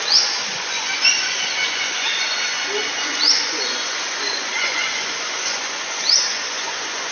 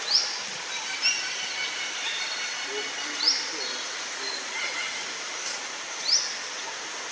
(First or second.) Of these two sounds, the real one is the second